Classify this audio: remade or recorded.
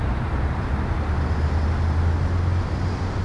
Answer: recorded